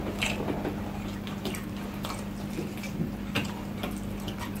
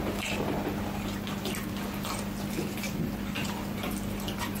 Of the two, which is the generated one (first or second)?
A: first